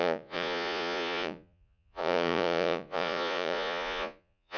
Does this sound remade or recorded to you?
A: remade